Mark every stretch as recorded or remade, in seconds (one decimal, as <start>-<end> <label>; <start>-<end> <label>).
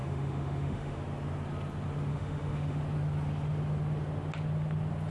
0.0-1.0 remade; 1.0-2.1 recorded; 2.1-2.8 remade; 2.8-5.1 recorded